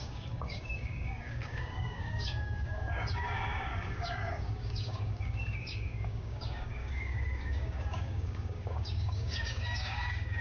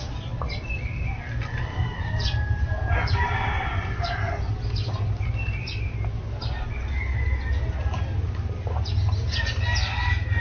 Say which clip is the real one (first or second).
second